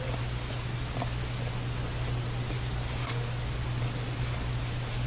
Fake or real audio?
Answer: real